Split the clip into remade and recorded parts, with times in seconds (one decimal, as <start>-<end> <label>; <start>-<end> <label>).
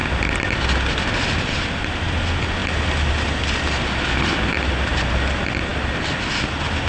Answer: 0.0-0.6 remade; 0.6-6.9 recorded